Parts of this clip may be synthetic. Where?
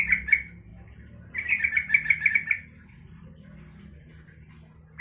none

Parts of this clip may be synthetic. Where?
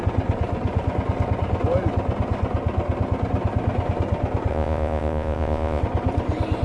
4.5-5.8 (vocoder, Vocos)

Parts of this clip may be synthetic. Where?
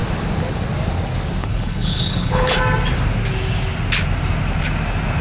1.4-2.6 (codec, HILCodec)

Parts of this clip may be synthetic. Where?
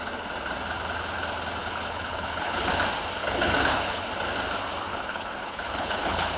1.6-2.7 (codec, HILCodec); 3.2-4.0; 4.9-6.4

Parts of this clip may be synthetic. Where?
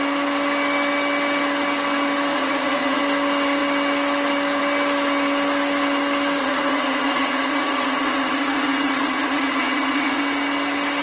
2.3-3.0 (vocoder, Vocos); 6.4-10.2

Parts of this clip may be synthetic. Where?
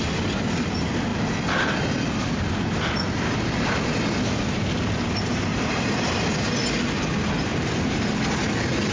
5.5-6.1 (vocoder, BigVGAN v2); 7.5-8.1